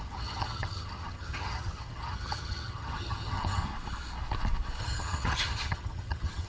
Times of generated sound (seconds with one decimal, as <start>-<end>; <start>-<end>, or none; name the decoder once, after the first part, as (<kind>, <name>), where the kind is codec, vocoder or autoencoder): 0.0-3.6 (vocoder, HiFi-GAN); 4.8-6.5